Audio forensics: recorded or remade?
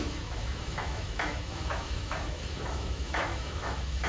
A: remade